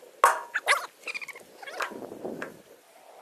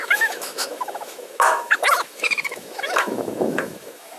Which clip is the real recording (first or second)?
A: first